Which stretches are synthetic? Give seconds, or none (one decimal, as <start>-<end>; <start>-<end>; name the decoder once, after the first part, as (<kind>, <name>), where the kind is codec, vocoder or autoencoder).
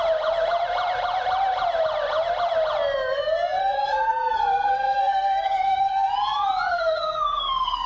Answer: 3.6-6.1 (codec, SNAC); 6.7-7.9